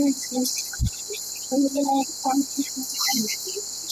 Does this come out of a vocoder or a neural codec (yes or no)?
no